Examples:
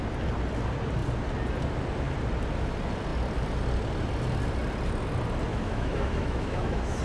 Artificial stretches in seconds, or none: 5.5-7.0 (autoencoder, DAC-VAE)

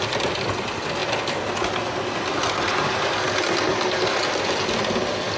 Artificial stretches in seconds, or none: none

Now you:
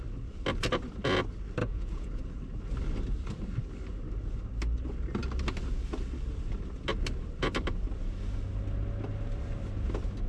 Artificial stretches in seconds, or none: 1.6-2.2 (vocoder, Vocos)